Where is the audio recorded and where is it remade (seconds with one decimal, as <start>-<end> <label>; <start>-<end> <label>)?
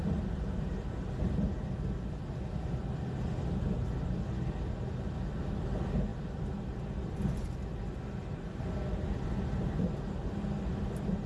0.0-6.1 recorded; 6.1-6.7 remade; 6.7-11.3 recorded